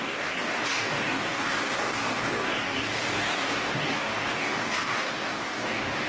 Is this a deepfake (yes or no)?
yes